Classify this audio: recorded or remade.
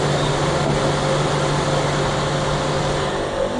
recorded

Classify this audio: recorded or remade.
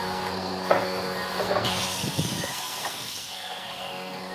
remade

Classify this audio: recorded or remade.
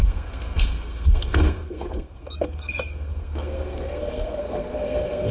remade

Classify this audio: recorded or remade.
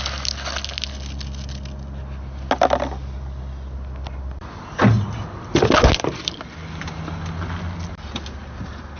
recorded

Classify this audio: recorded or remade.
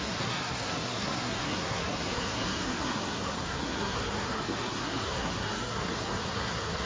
remade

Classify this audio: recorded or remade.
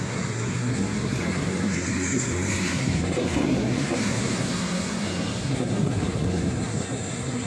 remade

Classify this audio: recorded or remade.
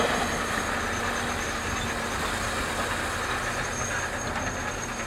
recorded